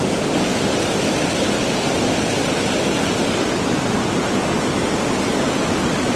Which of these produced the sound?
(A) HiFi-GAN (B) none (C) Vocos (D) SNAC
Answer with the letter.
B